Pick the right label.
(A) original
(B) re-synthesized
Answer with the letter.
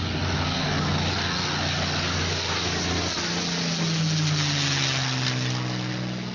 A